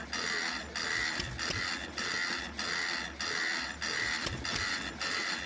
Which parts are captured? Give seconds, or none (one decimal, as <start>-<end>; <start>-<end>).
0.0-5.5

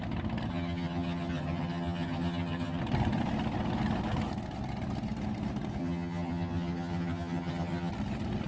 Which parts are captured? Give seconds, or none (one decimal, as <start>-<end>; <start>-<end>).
0.0-0.5; 2.8-5.8; 7.9-8.5

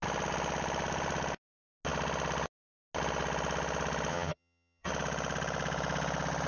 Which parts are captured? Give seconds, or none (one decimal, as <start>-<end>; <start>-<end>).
0.0-4.1; 4.9-6.5

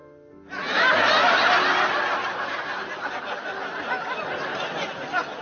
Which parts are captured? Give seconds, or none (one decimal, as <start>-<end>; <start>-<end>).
0.0-5.4

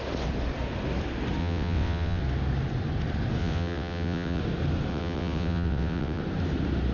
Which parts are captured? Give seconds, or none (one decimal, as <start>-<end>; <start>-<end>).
0.0-1.4; 2.2-3.4; 4.4-4.9; 6.2-6.9

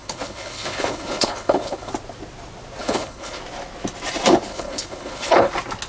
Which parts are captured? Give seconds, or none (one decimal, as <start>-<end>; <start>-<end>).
1.9-2.8; 3.4-4.5; 5.5-5.9

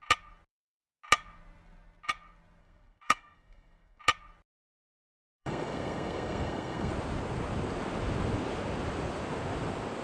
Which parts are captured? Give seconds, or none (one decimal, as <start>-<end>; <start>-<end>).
0.0-2.6; 4.0-4.6; 6.9-10.0